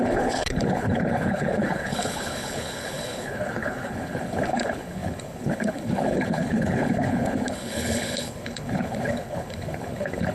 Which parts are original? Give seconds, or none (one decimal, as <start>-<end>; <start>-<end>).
none